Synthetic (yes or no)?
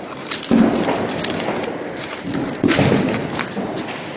yes